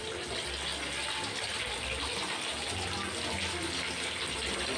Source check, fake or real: real